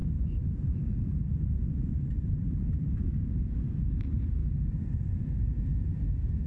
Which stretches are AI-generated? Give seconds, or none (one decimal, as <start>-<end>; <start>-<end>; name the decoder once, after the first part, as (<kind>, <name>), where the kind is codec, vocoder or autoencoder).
0.0-4.4 (vocoder, BigVGAN v2); 5.2-6.5